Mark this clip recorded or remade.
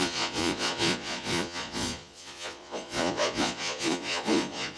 remade